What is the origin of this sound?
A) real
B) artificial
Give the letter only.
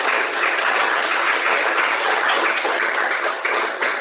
B